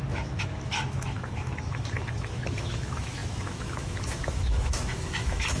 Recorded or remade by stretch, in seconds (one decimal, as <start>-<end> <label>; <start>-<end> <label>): 0.0-5.6 remade